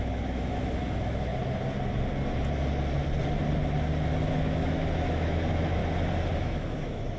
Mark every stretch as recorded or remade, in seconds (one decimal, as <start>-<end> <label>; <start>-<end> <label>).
0.0-1.3 remade; 1.3-4.3 recorded; 4.3-5.8 remade; 5.8-6.4 recorded; 6.4-7.2 remade